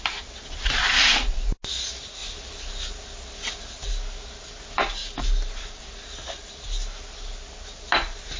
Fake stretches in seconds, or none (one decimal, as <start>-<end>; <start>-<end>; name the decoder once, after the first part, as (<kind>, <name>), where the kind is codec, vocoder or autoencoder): 5.0-5.8 (vocoder, BigVGAN v2)